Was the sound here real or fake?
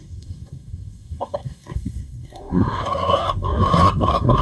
fake